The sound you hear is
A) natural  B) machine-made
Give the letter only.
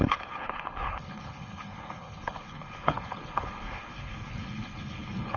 B